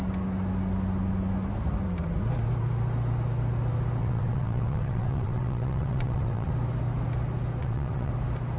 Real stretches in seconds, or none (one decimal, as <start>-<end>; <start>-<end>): 0.0-4.0; 6.5-7.6; 8.1-8.6